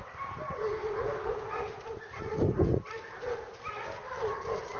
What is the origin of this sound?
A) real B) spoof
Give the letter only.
A